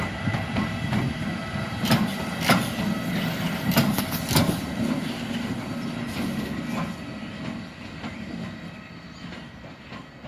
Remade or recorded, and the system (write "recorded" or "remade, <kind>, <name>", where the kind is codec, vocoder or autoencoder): recorded